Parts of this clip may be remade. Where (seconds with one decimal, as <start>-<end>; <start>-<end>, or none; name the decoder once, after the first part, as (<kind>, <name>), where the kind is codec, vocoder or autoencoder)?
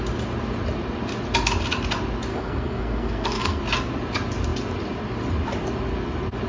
2.3-3.6 (codec, SNAC)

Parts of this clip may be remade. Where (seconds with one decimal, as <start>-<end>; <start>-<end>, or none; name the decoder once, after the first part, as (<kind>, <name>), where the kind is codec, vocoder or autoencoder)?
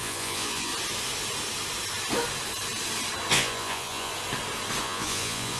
0.0-0.7 (vocoder, Vocos); 3.3-4.1; 4.8-5.6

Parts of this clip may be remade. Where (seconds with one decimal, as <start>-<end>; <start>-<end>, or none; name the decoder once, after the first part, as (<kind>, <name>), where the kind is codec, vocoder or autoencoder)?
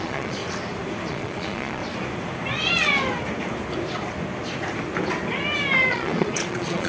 0.0-0.4 (vocoder, Vocos); 1.1-1.8; 5.9-6.9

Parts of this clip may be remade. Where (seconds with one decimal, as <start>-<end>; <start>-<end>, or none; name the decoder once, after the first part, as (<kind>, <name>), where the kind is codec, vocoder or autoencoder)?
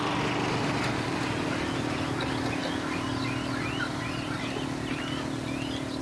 none